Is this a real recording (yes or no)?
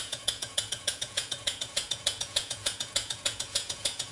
no